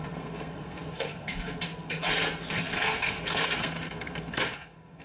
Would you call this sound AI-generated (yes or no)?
yes